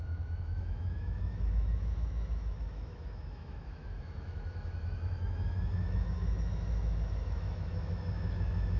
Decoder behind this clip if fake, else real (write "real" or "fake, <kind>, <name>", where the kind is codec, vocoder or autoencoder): fake, autoencoder, DAC-VAE